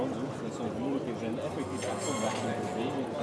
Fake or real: real